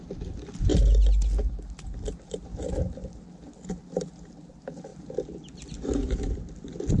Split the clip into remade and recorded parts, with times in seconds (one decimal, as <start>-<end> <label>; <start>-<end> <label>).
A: 0.0-7.0 recorded